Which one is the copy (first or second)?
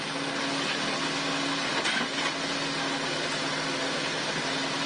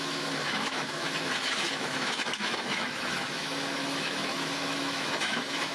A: second